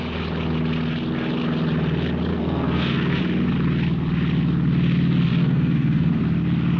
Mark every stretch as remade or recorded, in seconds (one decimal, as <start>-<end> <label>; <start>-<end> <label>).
0.0-2.3 recorded; 2.3-3.2 remade; 3.2-5.3 recorded; 5.3-6.1 remade; 6.1-6.8 recorded